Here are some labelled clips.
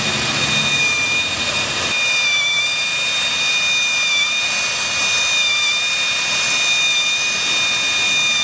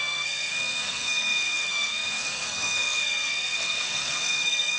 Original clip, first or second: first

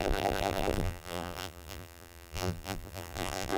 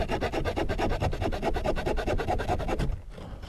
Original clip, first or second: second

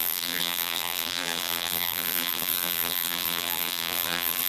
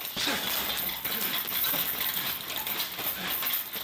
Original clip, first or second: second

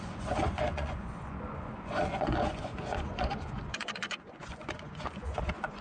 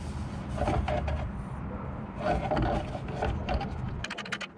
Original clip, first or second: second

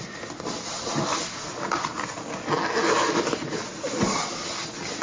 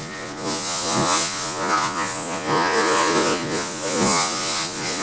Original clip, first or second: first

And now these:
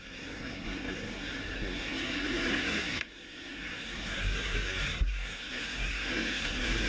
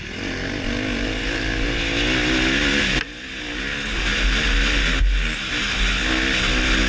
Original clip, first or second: second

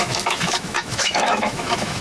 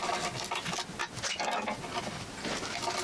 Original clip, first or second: second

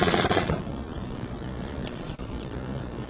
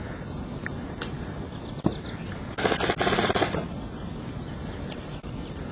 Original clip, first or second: second